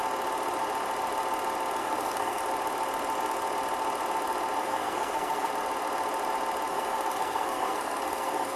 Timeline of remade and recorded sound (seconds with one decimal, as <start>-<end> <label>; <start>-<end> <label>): 0.0-1.8 recorded; 1.8-2.4 remade; 2.4-4.6 recorded; 4.6-5.5 remade; 5.5-6.7 recorded; 6.7-8.6 remade